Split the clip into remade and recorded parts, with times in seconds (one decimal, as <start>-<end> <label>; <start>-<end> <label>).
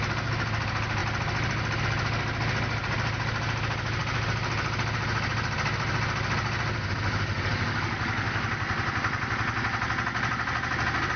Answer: 0.0-11.2 recorded